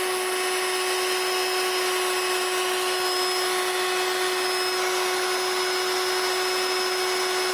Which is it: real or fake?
real